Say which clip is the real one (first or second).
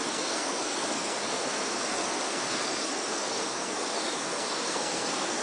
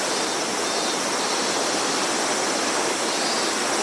second